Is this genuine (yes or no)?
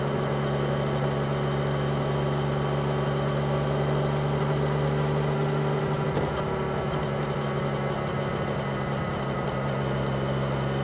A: yes